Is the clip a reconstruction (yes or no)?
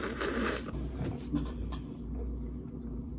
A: yes